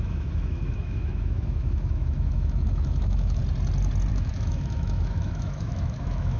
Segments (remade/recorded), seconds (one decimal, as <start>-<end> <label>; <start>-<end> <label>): 0.0-3.4 remade; 3.4-4.1 recorded; 4.1-6.4 remade